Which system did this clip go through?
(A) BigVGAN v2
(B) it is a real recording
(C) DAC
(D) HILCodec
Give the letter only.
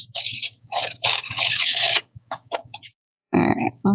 C